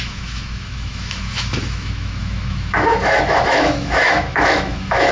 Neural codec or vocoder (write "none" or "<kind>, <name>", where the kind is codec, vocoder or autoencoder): autoencoder, DAC-VAE